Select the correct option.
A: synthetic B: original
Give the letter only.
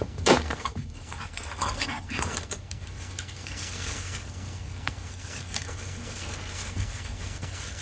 A